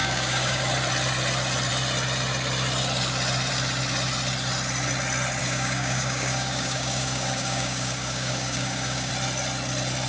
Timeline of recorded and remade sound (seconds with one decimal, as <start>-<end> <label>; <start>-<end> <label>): 0.0-0.6 remade; 0.6-5.4 recorded; 5.4-9.1 remade; 9.1-10.1 recorded